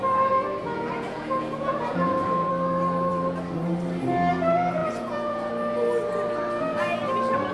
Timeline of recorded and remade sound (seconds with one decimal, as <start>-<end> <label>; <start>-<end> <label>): 0.0-0.6 recorded; 0.6-2.5 remade; 2.5-4.8 recorded; 4.8-5.5 remade; 5.5-7.5 recorded